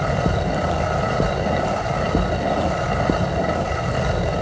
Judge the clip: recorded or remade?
recorded